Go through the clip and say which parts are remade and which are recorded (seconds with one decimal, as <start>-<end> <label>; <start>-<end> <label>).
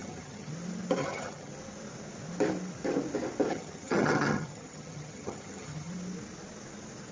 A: 0.0-0.5 remade; 0.5-1.0 recorded; 1.0-1.5 remade; 1.5-3.5 recorded; 3.5-5.9 remade; 5.9-7.1 recorded